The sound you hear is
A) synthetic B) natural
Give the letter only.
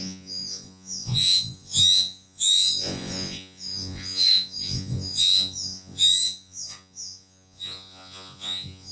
A